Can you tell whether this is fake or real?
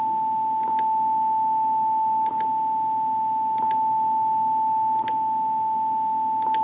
real